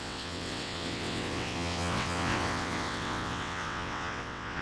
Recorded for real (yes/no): no